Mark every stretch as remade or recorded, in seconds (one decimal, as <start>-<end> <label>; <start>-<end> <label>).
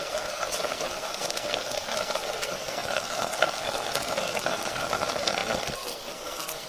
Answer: 0.0-6.7 remade